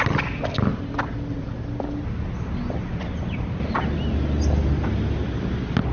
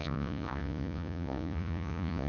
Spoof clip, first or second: second